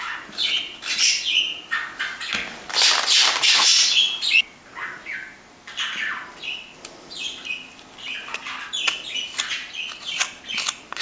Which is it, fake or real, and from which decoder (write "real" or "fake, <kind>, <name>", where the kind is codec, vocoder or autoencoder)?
real